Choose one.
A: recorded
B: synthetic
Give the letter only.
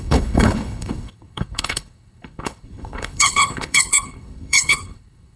B